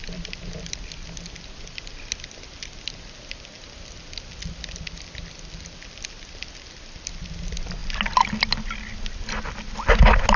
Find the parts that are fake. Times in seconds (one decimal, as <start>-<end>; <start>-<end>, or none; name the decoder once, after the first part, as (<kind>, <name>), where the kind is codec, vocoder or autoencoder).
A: none